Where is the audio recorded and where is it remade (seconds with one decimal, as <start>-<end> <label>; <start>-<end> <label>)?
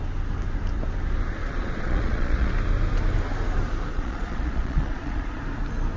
0.0-1.4 recorded; 1.4-2.5 remade; 2.5-3.9 recorded; 3.9-5.4 remade; 5.4-6.0 recorded